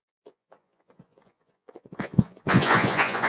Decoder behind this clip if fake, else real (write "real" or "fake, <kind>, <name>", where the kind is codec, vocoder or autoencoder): fake, vocoder, Vocos